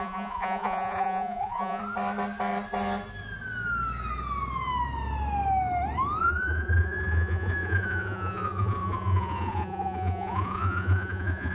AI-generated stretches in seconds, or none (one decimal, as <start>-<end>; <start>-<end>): 0.0-1.8; 6.2-11.5